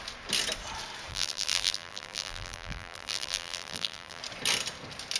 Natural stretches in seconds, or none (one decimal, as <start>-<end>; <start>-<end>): 0.0-1.1; 4.2-5.2